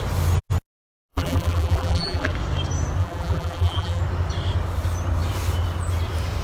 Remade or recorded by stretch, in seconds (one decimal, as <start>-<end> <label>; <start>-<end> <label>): 0.0-1.1 recorded; 1.1-2.3 remade; 2.3-3.0 recorded; 3.0-4.0 remade; 4.0-6.4 recorded